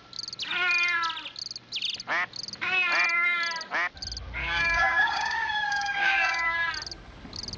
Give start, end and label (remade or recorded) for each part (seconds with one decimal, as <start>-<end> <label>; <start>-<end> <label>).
0.0-4.4 recorded; 4.4-6.7 remade; 6.7-7.6 recorded